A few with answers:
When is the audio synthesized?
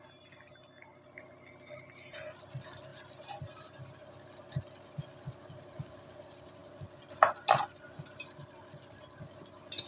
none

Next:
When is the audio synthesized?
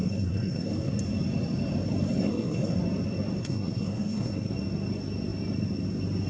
0.0-0.9; 2.2-2.8; 3.4-4.5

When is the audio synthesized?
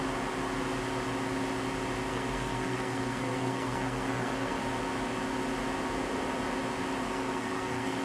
2.1-4.6; 7.0-8.0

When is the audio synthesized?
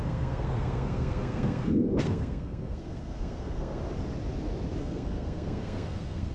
0.0-3.8; 4.8-6.3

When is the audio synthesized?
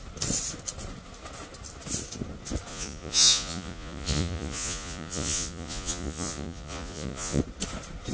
2.7-7.4